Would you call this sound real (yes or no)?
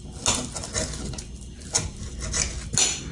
yes